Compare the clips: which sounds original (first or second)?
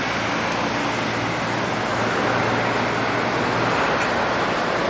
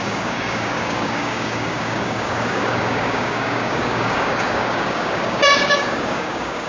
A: first